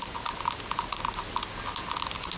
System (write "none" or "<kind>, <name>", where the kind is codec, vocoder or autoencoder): none